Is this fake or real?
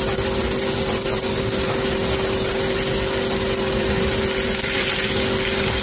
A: real